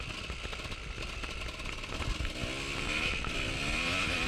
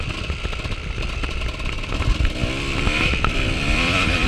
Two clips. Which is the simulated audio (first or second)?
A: second